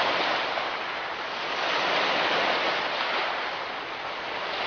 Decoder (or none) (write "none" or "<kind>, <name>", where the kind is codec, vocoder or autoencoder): none